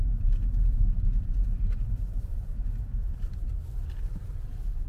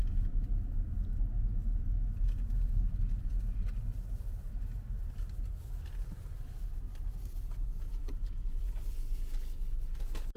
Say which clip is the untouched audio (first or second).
second